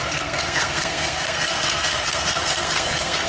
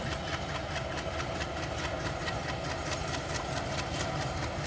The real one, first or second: second